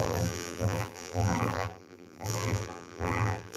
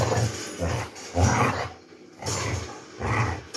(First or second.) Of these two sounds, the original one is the second